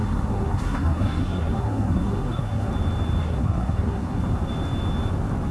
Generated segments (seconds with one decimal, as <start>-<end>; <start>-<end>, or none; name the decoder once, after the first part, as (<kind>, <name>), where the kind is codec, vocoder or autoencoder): 0.0-2.7 (codec, SNAC); 3.2-4.2